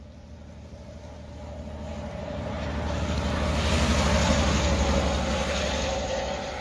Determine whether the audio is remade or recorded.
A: recorded